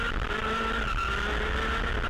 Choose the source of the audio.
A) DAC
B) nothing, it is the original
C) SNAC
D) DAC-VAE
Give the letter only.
B